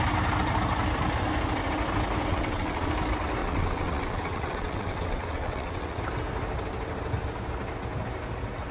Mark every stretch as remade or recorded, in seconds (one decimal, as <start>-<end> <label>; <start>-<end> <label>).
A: 0.0-2.3 recorded; 2.3-2.9 remade; 2.9-3.4 recorded; 3.4-6.0 remade; 6.0-8.7 recorded